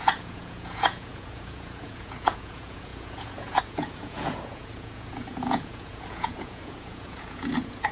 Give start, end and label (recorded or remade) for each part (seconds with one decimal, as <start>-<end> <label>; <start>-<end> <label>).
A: 0.0-7.9 remade